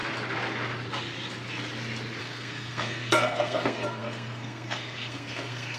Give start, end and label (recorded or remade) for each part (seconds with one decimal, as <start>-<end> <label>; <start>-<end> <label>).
0.0-2.2 recorded; 2.2-5.8 remade